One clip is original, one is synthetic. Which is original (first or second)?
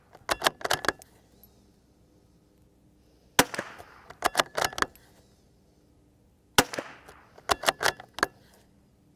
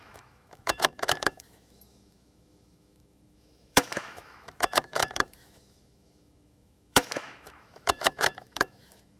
first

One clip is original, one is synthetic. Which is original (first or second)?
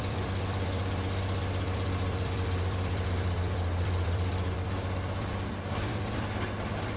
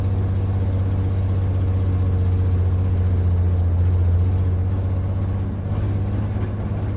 second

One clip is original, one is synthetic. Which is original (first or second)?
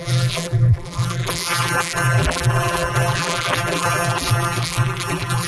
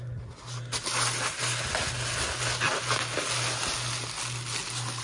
second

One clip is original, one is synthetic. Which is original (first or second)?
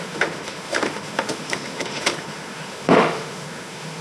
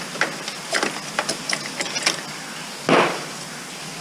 second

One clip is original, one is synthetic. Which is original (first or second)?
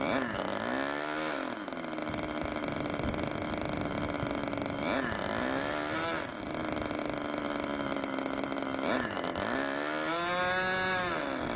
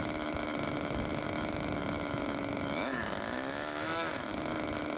first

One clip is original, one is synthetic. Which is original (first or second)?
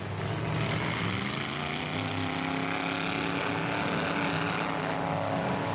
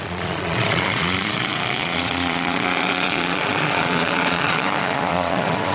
first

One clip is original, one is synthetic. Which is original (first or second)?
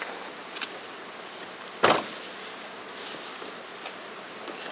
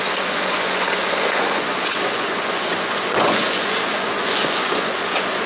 first